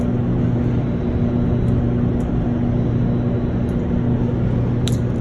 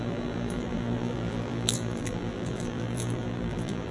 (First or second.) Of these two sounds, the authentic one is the first